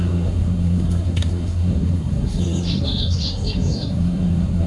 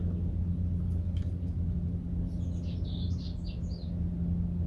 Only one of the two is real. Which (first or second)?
second